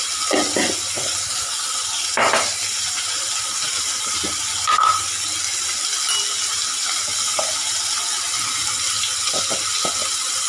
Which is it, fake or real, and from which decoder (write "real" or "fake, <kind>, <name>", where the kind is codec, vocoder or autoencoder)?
real